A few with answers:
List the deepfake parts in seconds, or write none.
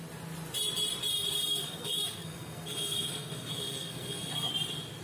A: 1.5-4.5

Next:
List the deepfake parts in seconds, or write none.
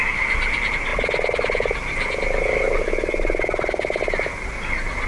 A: none